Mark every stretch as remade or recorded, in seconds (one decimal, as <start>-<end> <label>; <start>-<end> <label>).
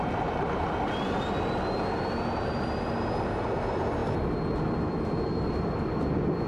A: 0.0-6.5 recorded